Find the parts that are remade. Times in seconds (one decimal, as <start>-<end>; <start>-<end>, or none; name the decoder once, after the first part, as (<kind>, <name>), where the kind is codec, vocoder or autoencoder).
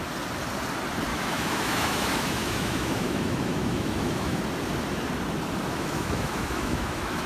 1.1-4.4 (autoencoder, DAC-VAE); 5.7-7.3